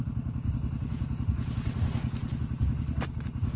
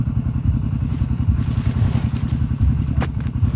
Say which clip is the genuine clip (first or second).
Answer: first